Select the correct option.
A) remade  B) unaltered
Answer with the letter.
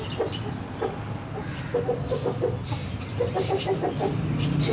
B